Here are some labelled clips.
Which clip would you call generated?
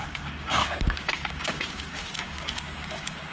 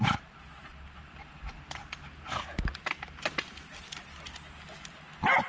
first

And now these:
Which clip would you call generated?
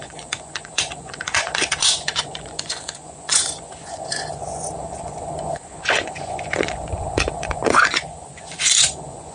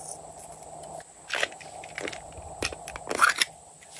first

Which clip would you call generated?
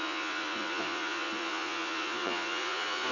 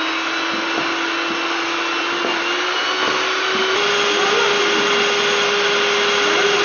first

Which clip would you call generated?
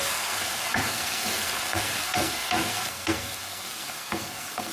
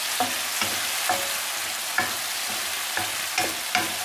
first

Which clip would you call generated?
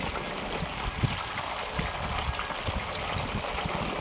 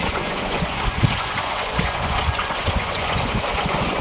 second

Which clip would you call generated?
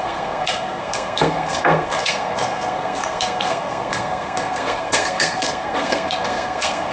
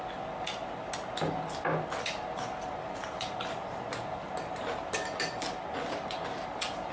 first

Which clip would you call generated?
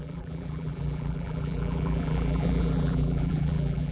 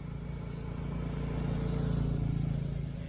first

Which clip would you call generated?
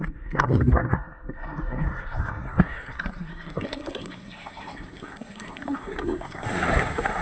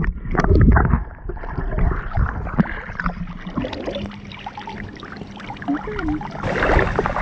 first